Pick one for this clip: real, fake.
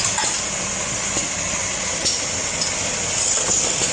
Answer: real